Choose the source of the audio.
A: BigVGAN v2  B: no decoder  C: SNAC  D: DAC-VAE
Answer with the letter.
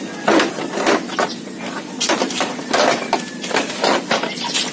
A